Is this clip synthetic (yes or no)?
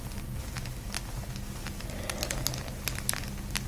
no